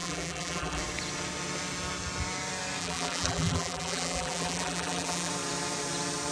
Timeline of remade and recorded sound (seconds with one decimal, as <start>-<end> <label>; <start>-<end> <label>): 0.0-0.8 remade; 0.8-2.8 recorded; 2.8-5.3 remade; 5.3-6.3 recorded

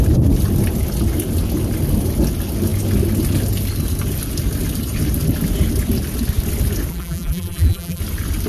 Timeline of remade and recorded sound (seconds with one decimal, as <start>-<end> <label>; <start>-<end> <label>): 0.0-6.9 recorded; 6.9-8.0 remade; 8.0-8.5 recorded

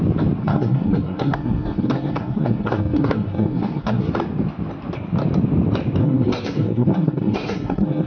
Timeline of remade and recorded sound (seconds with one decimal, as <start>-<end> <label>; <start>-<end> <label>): 0.0-0.4 recorded; 0.4-4.1 remade; 4.1-6.0 recorded; 6.0-8.1 remade